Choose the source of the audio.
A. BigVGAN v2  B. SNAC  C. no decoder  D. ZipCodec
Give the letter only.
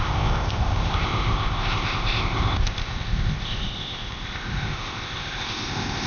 D